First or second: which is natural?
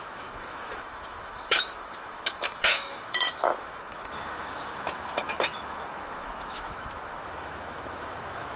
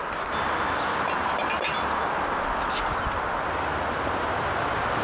second